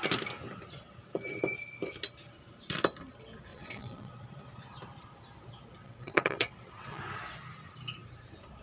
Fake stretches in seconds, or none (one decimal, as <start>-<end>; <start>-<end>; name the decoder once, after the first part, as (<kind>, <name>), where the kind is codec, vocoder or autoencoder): 3.5-4.1 (vocoder, WaveNeXt); 5.8-7.0